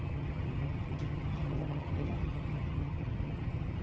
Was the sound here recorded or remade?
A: remade